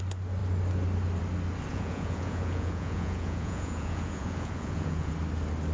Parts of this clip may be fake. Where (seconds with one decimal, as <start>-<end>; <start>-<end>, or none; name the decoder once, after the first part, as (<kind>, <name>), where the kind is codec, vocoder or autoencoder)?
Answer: 1.7-5.1 (vocoder, Vocos)

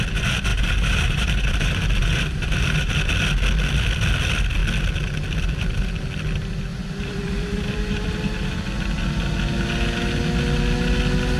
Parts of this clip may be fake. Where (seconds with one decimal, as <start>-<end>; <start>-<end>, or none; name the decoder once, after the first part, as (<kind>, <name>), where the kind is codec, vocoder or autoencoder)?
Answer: 0.5-3.0 (vocoder, BigVGAN v2); 6.7-8.5

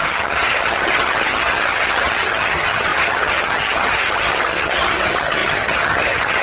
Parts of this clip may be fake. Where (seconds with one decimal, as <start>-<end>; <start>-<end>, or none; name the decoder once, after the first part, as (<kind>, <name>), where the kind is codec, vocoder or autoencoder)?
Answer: 0.0-6.4 (vocoder, HiFi-GAN)